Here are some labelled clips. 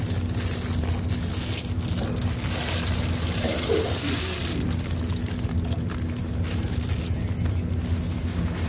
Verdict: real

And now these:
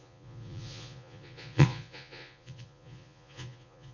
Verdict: fake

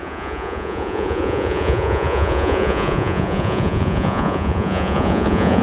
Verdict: fake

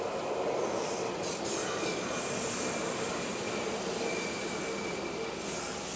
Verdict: real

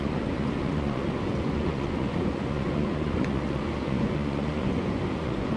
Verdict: fake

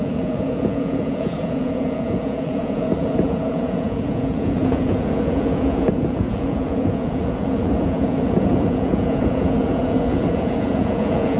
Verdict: fake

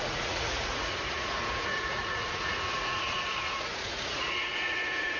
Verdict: fake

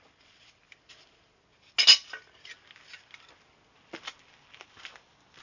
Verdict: real